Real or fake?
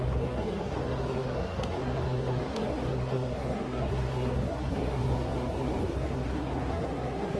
fake